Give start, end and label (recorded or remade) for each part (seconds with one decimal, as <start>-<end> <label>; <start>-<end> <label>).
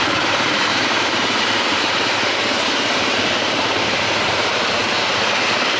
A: 0.0-4.8 remade; 4.8-5.8 recorded